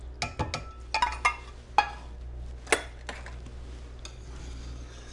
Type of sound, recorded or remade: recorded